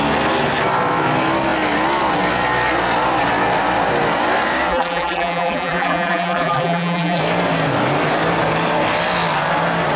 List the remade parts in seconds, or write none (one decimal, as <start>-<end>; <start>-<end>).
4.7-7.2